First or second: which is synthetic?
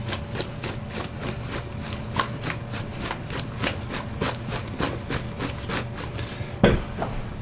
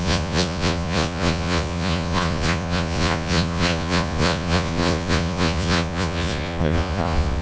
second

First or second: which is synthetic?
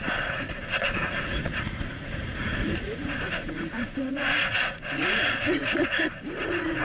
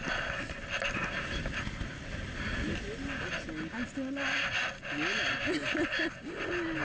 first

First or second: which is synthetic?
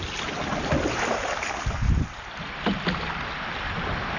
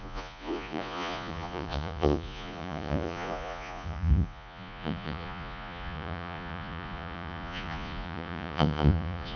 second